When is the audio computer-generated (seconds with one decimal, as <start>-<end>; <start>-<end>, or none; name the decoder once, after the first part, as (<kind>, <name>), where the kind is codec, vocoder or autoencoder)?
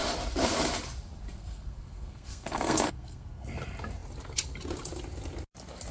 1.4-3.5 (codec, SNAC)